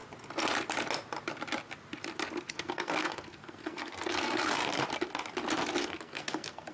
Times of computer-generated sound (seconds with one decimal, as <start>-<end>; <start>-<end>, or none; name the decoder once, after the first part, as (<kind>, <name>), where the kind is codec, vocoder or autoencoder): 2.5-4.6 (codec, SNAC); 5.8-6.7